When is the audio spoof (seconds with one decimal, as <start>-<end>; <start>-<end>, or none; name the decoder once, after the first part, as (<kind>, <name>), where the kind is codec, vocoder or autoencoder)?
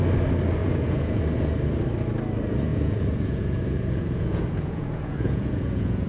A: 0.6-1.2 (vocoder, Vocos); 2.7-6.1